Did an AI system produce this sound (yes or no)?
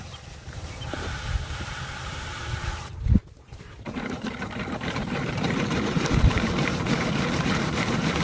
yes